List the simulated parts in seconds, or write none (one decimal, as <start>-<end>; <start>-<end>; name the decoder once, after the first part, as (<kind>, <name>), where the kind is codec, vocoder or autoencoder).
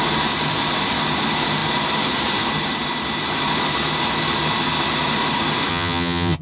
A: 5.7-6.4 (vocoder, HiFi-GAN)